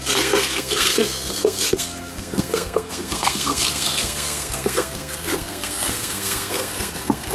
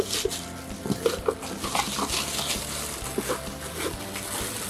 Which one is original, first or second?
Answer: second